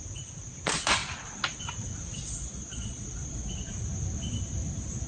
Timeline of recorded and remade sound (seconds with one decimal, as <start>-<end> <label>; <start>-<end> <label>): 0.0-2.2 recorded; 2.2-3.5 remade; 3.5-5.1 recorded

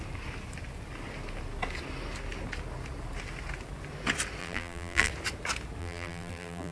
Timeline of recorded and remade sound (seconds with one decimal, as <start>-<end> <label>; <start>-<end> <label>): 0.0-4.4 recorded; 4.4-5.1 remade; 5.1-5.8 recorded; 5.8-6.7 remade

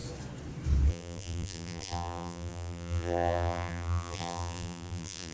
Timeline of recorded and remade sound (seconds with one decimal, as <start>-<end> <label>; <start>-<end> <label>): 0.0-0.9 recorded; 0.9-5.3 remade

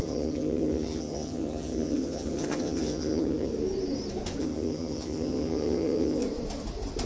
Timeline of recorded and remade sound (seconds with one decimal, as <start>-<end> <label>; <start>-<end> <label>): 0.0-3.5 remade; 3.5-4.4 recorded; 4.4-6.2 remade; 6.2-7.1 recorded

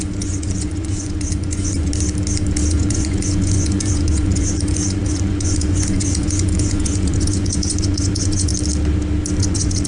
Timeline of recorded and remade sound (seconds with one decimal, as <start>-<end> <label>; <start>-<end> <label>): 0.0-1.9 remade; 1.9-2.7 recorded; 2.7-8.5 remade; 8.5-9.4 recorded; 9.4-9.9 remade

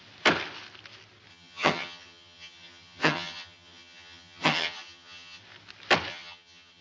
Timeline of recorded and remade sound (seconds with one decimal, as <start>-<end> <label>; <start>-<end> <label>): 0.0-1.3 recorded; 1.3-5.4 remade; 5.4-6.1 recorded; 6.1-6.8 remade

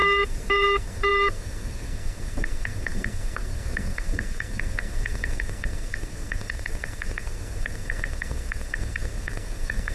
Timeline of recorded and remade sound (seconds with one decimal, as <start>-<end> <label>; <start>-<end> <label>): 0.0-9.9 remade